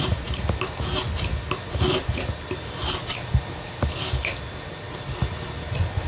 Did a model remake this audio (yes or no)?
no